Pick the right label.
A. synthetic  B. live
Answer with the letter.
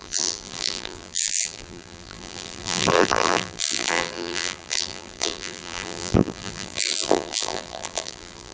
A